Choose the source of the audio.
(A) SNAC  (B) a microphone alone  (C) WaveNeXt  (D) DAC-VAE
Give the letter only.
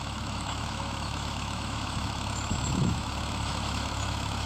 D